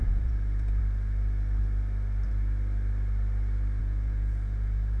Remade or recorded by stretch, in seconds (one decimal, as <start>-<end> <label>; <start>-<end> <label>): 0.0-0.8 remade; 0.8-3.8 recorded; 3.8-5.0 remade